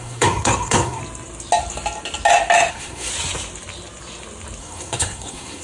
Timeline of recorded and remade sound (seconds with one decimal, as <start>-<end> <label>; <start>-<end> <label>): 0.0-1.0 remade; 1.0-2.7 recorded; 2.7-3.1 remade; 3.1-4.6 recorded; 4.6-5.6 remade